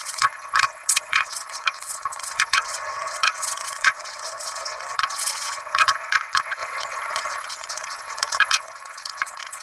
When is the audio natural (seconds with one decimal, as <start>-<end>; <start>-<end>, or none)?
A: none